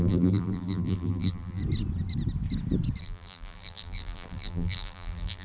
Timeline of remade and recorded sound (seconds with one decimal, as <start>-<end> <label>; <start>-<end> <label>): 0.0-1.6 remade; 1.6-3.0 recorded; 3.0-5.4 remade